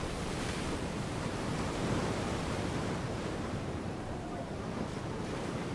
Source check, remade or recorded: remade